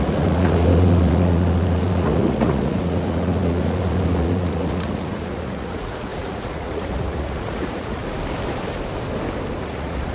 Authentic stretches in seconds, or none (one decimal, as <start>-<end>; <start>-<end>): 8.0-9.6